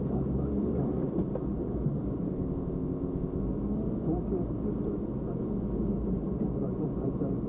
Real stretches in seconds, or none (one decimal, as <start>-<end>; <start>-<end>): 0.0-2.3; 3.4-7.5